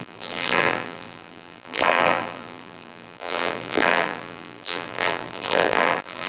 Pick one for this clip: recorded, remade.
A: remade